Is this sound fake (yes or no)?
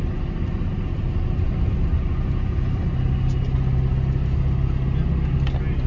no